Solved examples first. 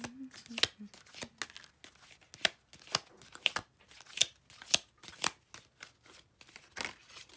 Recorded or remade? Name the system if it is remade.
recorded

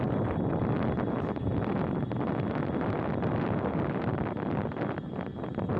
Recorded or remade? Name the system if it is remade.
recorded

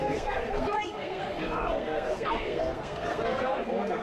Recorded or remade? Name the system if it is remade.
remade, codec, SNAC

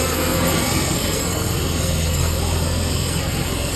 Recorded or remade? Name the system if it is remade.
remade, codec, SNAC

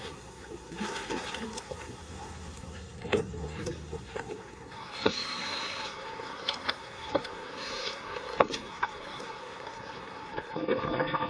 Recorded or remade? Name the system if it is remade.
remade, codec, SNAC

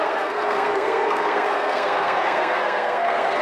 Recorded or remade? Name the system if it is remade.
remade, codec, SNAC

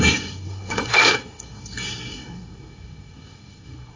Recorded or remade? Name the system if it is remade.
remade, codec, SNAC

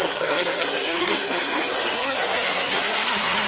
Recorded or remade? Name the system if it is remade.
remade, codec, SNAC